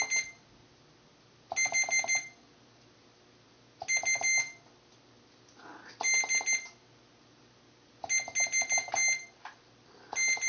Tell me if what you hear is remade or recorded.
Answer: recorded